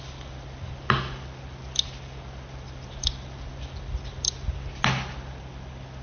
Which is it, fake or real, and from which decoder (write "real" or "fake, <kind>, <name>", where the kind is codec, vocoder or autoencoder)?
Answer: real